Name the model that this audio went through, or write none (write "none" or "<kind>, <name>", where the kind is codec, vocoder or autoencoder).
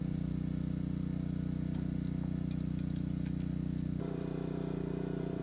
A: vocoder, BigVGAN v2